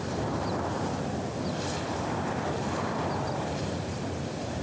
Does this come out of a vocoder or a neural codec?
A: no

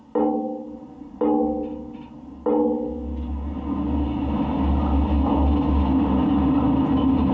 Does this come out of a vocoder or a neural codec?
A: no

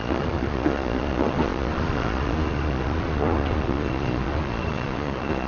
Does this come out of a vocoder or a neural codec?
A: yes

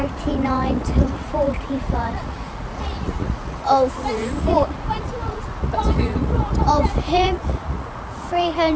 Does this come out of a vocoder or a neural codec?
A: yes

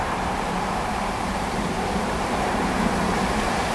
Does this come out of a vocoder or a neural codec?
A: yes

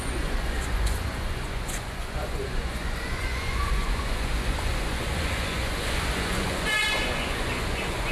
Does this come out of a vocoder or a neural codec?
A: yes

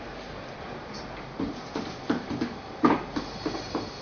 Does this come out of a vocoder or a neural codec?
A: no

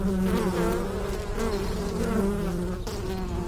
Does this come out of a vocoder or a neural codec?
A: no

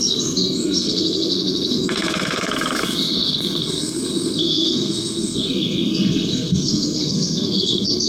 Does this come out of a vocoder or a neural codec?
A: yes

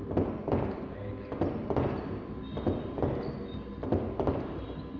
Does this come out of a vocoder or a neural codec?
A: no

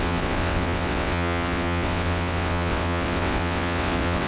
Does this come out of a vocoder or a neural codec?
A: yes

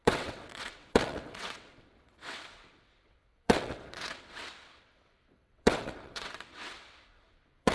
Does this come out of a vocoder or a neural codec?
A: yes